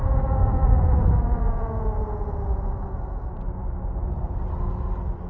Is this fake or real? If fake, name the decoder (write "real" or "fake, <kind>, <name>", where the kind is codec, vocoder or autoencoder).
real